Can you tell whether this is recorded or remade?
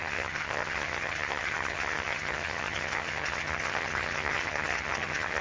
remade